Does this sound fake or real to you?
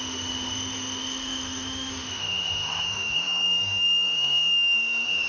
fake